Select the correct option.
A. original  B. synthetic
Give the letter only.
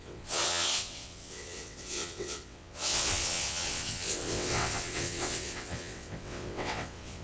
B